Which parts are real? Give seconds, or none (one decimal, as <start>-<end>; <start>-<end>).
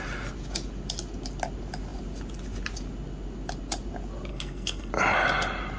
0.0-4.3; 4.9-5.8